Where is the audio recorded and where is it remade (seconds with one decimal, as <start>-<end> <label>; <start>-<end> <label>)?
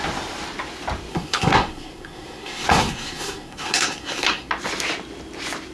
0.0-1.1 recorded; 1.1-4.5 remade; 4.5-5.7 recorded